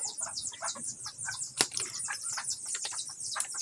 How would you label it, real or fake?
fake